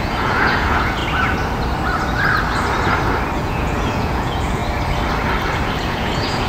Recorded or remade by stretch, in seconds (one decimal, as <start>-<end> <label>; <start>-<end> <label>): 0.0-1.0 remade; 1.0-3.4 recorded; 3.4-4.6 remade; 4.6-5.8 recorded; 5.8-6.5 remade